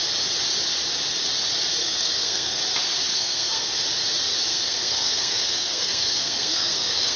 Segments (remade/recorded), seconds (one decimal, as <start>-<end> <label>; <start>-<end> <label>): 0.0-1.8 recorded; 1.8-2.6 remade; 2.6-3.1 recorded; 3.1-3.8 remade; 3.8-4.5 recorded; 4.5-7.2 remade

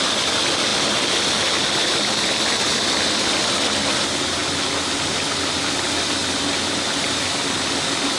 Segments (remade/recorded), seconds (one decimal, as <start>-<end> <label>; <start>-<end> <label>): 0.0-8.2 recorded

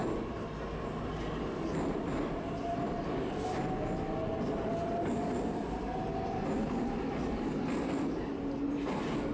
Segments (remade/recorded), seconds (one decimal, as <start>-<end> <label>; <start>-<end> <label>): 0.0-9.3 recorded

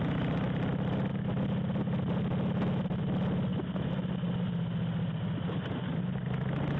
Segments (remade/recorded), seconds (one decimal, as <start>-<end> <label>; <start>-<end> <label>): 0.0-6.8 recorded